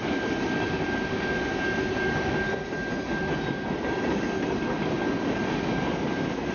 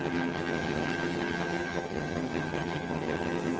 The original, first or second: first